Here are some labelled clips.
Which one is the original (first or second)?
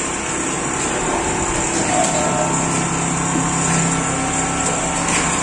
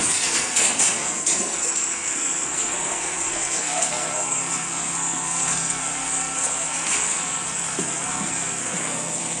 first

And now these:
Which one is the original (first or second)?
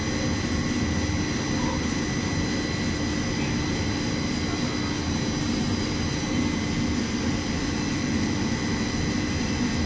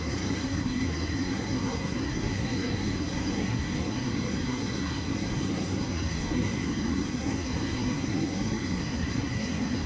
first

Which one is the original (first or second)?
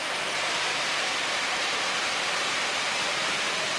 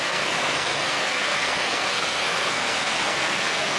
first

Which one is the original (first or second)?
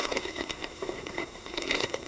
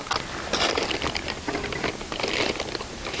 second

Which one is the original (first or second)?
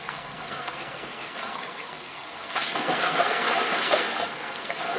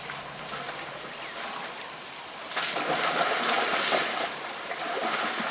second